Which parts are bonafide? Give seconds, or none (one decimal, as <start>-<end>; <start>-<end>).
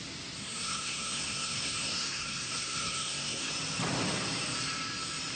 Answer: 0.0-0.4; 3.5-5.3